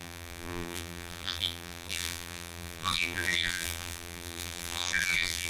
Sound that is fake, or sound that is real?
fake